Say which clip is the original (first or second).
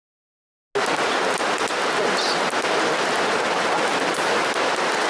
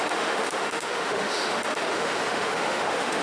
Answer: first